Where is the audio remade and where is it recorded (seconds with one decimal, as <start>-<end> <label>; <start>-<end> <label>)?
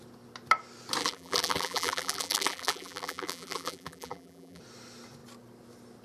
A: 0.0-1.0 recorded; 1.0-4.6 remade; 4.6-6.0 recorded